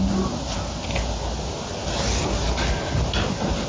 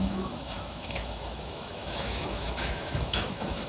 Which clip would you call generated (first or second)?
second